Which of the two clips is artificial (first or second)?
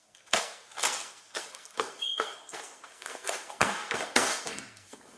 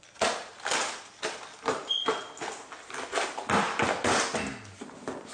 first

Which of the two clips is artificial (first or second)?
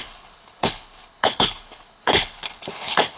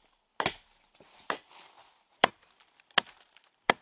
first